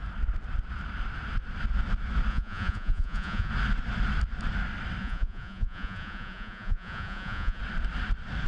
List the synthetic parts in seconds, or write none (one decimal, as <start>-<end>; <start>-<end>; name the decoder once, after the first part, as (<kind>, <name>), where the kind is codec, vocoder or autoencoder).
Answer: 2.3-3.5 (vocoder, Vocos); 5.0-7.6